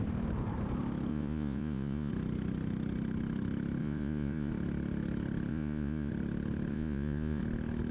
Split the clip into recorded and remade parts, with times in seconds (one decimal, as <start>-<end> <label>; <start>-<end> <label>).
0.0-1.1 recorded; 1.1-2.1 remade; 2.1-3.8 recorded; 3.8-4.5 remade; 4.5-5.5 recorded; 5.5-6.1 remade; 6.1-6.7 recorded; 6.7-7.4 remade; 7.4-7.9 recorded